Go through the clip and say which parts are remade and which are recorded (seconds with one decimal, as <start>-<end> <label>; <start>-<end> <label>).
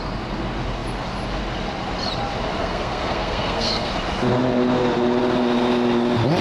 0.0-2.6 recorded; 2.6-3.9 remade; 3.9-6.4 recorded